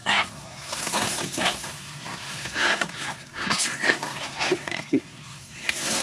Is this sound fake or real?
fake